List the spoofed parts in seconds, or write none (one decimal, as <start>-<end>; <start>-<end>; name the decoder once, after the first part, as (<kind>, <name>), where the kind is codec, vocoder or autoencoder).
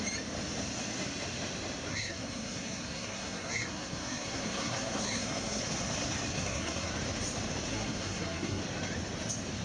1.9-5.6 (codec, SNAC); 6.3-6.9; 7.7-8.6